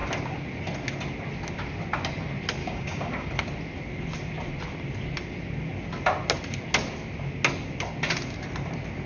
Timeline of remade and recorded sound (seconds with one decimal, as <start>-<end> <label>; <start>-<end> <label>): 0.0-2.6 recorded; 2.6-3.3 remade; 3.3-9.1 recorded